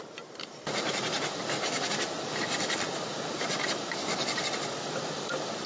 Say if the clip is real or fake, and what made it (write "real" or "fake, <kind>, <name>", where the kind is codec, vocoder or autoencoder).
real